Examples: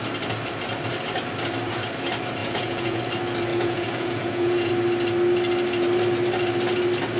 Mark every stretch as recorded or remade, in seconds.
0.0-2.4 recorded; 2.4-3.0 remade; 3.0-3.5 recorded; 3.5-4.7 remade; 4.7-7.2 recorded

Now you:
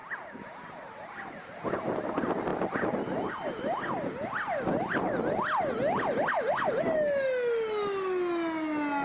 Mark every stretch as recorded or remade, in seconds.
0.0-9.0 recorded